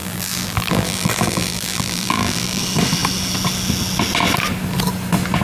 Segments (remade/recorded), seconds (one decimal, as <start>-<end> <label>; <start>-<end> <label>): 0.0-2.6 remade; 2.6-5.4 recorded